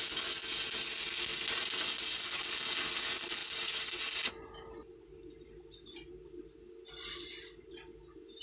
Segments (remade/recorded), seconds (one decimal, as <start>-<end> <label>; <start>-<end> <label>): 0.0-8.4 recorded